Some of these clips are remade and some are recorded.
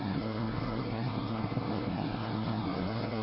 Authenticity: remade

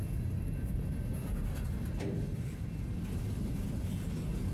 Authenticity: recorded